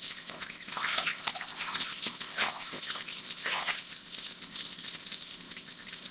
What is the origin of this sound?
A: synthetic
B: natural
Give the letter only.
A